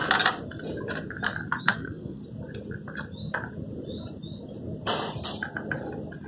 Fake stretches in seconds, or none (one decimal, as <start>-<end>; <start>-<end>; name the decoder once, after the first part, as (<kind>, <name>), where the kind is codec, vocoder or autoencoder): 1.6-2.2 (codec, SNAC)